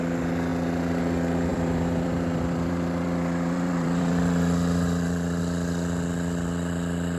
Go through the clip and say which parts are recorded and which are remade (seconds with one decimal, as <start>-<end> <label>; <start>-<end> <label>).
0.0-1.5 recorded; 1.5-5.4 remade; 5.4-7.2 recorded